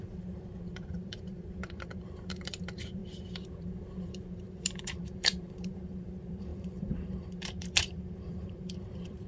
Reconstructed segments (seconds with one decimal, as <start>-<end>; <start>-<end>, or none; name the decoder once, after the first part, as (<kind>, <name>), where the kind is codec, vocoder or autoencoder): 0.0-9.3 (vocoder, BigVGAN v2)